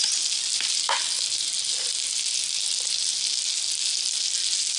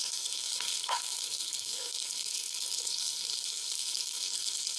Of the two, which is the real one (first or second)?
first